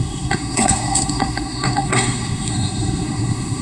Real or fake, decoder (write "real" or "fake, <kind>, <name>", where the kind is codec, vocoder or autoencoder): fake, codec, SNAC